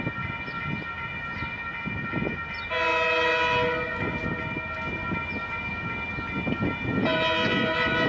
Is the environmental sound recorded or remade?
recorded